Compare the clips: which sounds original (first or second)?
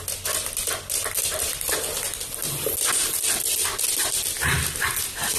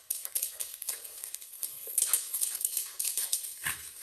first